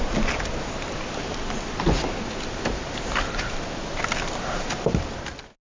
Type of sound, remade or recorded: recorded